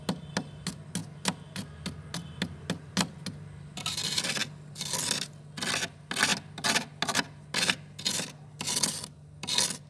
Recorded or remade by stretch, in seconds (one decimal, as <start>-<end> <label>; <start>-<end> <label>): 0.0-9.9 recorded